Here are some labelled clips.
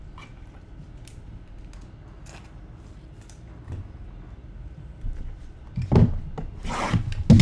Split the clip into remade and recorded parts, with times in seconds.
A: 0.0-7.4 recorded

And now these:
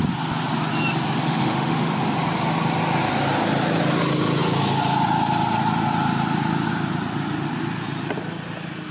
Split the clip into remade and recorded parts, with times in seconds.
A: 0.0-1.2 recorded; 1.2-2.0 remade; 2.0-8.9 recorded

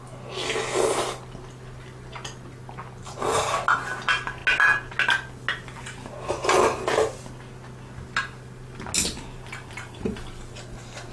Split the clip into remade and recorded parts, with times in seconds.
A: 0.0-11.1 recorded

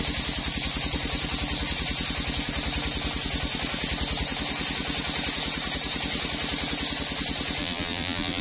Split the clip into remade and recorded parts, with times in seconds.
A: 0.0-7.6 recorded; 7.6-8.4 remade

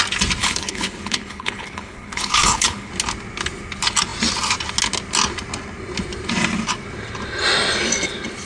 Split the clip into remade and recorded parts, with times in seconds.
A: 0.0-0.4 recorded; 0.4-2.9 remade; 2.9-8.5 recorded